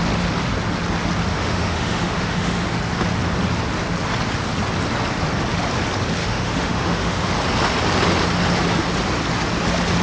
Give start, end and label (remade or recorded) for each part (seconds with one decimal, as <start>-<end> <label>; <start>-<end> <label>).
0.0-1.3 recorded; 1.3-2.8 remade; 2.8-6.2 recorded; 6.2-7.3 remade; 7.3-10.0 recorded